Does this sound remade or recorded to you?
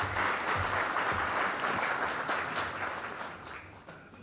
recorded